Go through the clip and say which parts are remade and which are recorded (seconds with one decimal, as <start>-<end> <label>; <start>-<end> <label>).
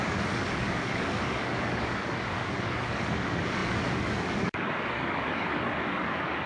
0.0-6.5 remade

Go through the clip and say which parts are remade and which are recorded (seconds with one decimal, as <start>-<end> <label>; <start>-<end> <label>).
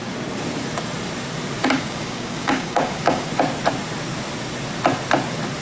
0.0-1.6 recorded; 1.6-3.3 remade; 3.3-5.6 recorded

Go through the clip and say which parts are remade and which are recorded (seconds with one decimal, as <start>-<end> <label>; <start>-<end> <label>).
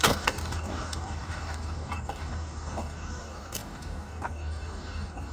0.0-5.3 remade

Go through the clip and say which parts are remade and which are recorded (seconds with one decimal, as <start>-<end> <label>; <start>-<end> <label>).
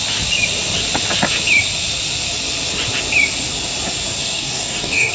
0.0-4.2 recorded; 4.2-5.1 remade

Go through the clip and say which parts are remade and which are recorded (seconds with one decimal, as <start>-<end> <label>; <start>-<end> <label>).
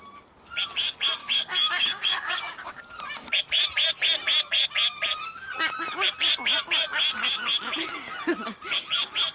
0.0-1.2 recorded; 1.2-2.8 remade; 2.8-9.3 recorded